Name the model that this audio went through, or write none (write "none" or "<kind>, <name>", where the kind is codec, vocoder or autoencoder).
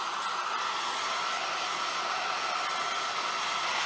none